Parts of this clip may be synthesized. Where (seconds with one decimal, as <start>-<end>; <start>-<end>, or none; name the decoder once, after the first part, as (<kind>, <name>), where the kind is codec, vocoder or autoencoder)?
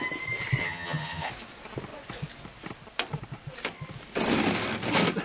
0.6-1.3 (vocoder, HiFi-GAN)